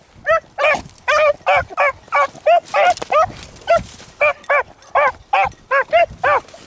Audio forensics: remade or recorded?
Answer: recorded